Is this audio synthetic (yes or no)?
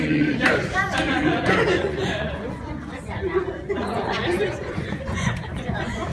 yes